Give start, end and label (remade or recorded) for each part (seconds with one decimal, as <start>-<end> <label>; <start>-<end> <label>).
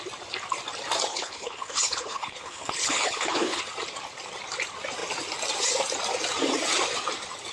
0.0-1.1 recorded; 1.1-3.6 remade; 3.6-7.5 recorded